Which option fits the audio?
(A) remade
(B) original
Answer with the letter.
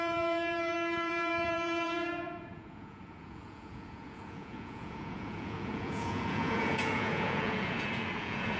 A